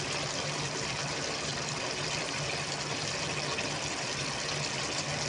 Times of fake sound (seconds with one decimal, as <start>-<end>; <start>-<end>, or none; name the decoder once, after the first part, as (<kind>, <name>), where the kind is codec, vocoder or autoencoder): none

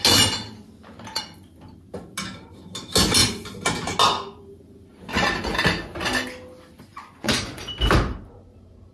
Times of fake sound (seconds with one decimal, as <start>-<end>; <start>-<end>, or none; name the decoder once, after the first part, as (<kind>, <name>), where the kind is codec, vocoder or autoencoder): 6.9-7.6 (vocoder, Vocos)

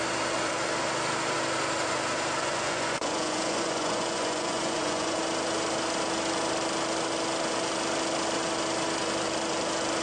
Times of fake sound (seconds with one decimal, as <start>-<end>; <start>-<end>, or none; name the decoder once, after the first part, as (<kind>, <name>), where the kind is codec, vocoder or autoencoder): 2.4-5.2 (vocoder, Vocos)

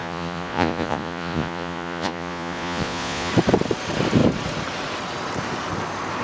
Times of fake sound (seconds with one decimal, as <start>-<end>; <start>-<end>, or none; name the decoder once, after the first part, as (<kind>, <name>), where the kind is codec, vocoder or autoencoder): 0.0-3.3 (vocoder, Vocos)

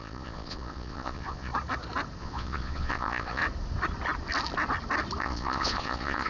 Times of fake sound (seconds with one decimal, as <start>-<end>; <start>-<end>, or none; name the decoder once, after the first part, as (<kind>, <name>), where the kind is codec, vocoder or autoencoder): 0.0-1.5 (vocoder, Vocos); 2.2-3.4; 5.2-6.3